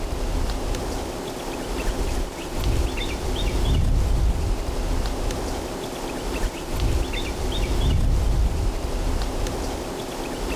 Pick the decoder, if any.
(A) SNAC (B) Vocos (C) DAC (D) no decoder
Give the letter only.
D